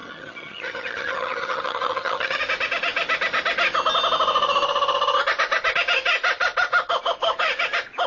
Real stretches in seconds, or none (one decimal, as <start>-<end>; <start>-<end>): 2.4-8.1